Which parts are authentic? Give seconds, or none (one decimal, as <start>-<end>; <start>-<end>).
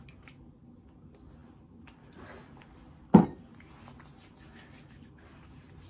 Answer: 0.0-5.9